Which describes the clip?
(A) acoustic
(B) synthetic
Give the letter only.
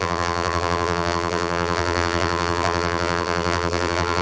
B